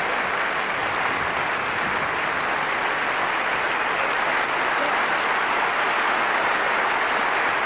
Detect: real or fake real